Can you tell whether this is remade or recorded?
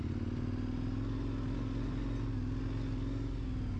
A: recorded